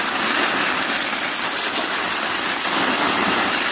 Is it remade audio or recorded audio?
recorded